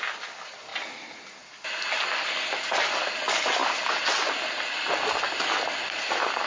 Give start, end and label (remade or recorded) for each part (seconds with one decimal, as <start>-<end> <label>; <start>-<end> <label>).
0.0-6.5 recorded